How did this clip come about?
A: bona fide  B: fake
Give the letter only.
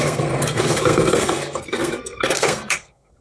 B